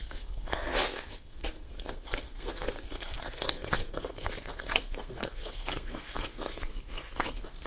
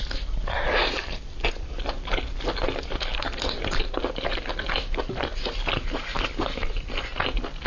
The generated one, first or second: first